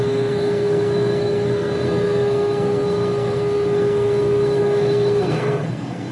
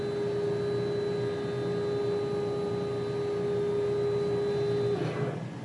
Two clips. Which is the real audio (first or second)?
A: second